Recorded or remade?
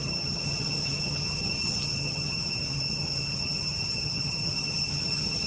remade